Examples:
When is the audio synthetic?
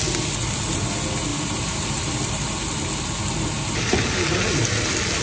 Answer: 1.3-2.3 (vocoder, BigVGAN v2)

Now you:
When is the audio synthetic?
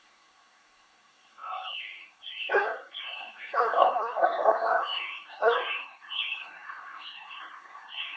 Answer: 0.0-8.2 (codec, SNAC)